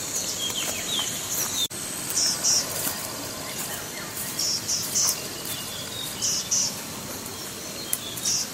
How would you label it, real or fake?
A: real